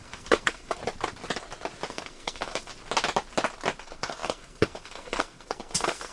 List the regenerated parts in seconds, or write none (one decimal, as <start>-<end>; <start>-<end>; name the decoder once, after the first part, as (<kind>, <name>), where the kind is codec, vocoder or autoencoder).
0.0-0.8 (codec, SNAC); 1.9-2.7; 3.8-6.1